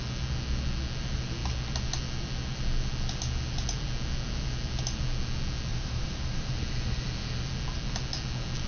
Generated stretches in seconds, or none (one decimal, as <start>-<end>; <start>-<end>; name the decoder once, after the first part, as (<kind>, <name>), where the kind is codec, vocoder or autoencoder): 5.7-6.5 (vocoder, BigVGAN v2)